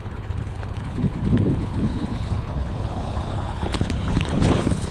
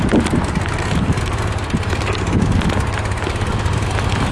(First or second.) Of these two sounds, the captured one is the second